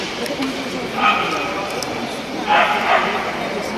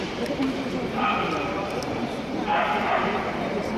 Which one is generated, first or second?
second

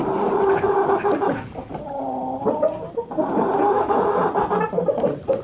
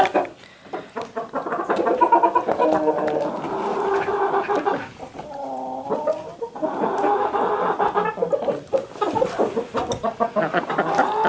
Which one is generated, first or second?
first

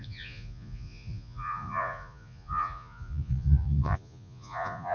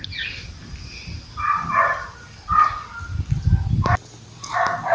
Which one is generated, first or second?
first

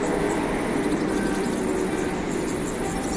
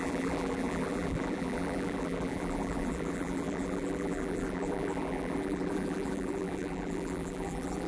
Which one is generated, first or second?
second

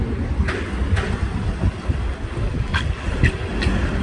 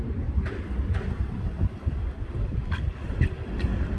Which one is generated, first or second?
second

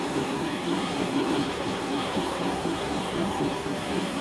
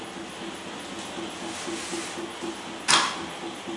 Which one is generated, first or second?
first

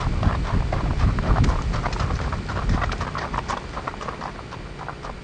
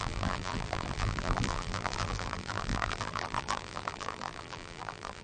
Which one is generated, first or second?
second